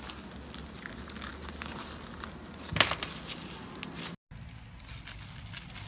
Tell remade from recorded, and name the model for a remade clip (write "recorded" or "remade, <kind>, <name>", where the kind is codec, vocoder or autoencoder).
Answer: recorded